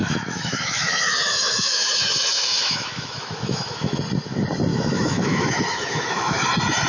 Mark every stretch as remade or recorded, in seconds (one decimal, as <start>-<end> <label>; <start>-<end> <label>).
0.0-4.0 remade; 4.0-4.7 recorded; 4.7-6.4 remade; 6.4-6.9 recorded